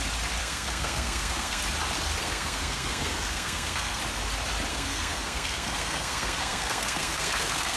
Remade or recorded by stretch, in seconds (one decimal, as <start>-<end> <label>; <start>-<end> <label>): 0.0-0.4 recorded; 0.4-1.6 remade; 1.6-2.2 recorded; 2.2-4.0 remade; 4.0-4.7 recorded; 4.7-7.8 remade